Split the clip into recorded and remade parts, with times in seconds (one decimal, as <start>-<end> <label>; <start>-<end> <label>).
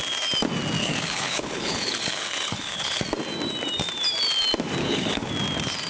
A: 0.0-0.8 recorded; 0.8-3.0 remade; 3.0-4.8 recorded; 4.8-5.3 remade; 5.3-5.9 recorded